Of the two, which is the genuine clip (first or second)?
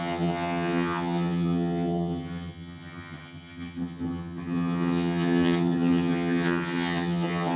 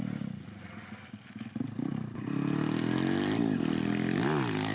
second